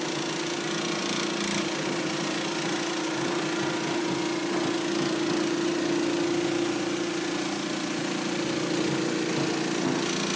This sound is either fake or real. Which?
real